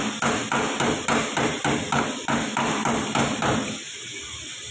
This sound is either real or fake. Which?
real